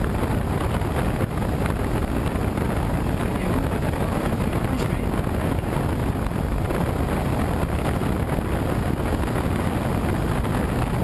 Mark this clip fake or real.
real